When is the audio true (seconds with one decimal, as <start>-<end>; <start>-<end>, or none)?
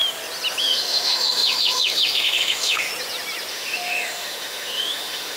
0.0-0.6; 2.9-3.5